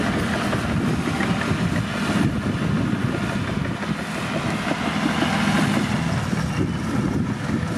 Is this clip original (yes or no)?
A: yes